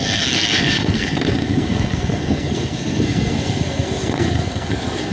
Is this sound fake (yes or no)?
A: yes